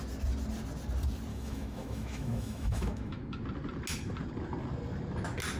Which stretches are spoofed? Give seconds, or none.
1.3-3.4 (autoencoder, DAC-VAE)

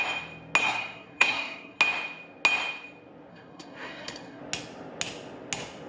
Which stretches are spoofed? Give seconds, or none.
0.6-1.8 (codec, SNAC); 3.3-4.4

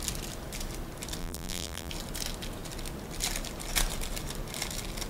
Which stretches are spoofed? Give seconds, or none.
1.2-1.9 (vocoder, BigVGAN v2)

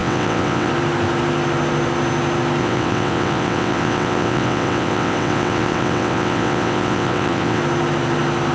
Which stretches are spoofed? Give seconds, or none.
0.0-0.7 (vocoder, WaveNeXt); 2.6-7.6

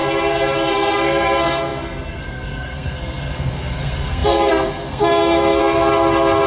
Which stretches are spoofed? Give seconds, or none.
0.7-5.6 (codec, SNAC)